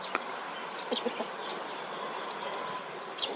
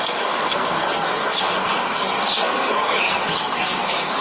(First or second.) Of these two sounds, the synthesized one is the second